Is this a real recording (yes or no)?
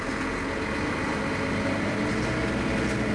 yes